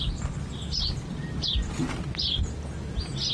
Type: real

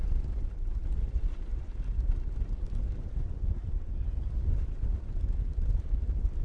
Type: real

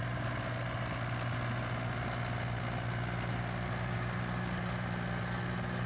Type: real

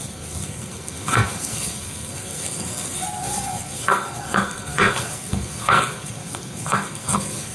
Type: fake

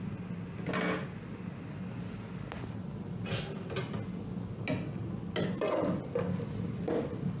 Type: real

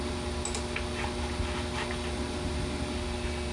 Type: real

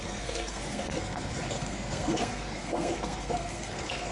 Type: fake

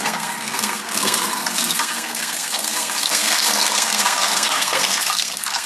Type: fake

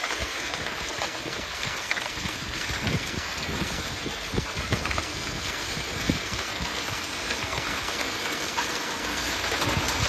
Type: fake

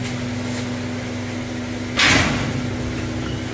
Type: real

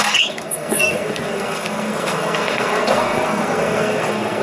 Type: fake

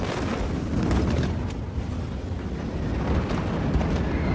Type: real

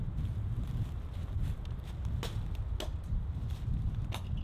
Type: real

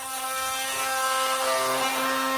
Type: real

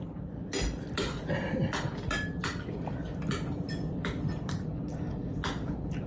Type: real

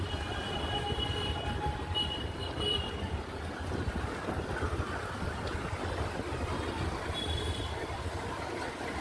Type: real